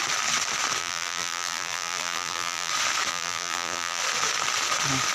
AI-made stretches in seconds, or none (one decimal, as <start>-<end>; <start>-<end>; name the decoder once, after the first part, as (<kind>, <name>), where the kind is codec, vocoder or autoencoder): 0.8-2.7 (vocoder, BigVGAN v2); 3.1-4.0